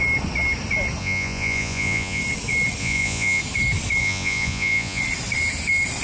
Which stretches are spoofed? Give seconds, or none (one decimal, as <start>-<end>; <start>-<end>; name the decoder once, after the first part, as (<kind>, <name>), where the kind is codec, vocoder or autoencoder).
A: 1.0-2.2 (vocoder, Vocos); 2.8-3.4; 4.0-5.0